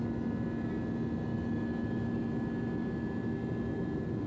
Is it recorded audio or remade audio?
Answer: recorded